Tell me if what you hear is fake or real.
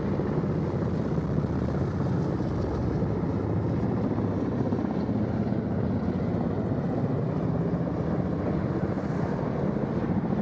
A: real